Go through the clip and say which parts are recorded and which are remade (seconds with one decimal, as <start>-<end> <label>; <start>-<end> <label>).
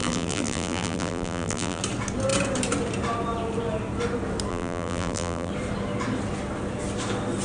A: 0.0-1.8 remade; 1.8-4.5 recorded; 4.5-5.5 remade; 5.5-7.4 recorded